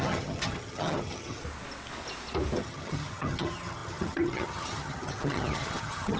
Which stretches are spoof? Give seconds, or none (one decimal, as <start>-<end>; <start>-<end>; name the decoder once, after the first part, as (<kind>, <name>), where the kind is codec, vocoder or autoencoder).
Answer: 0.0-1.4 (vocoder, HiFi-GAN); 2.6-6.2